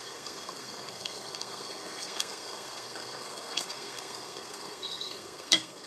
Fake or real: fake